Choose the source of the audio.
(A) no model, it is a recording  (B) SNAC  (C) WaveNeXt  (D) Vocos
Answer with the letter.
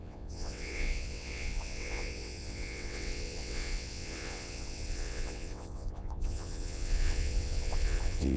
C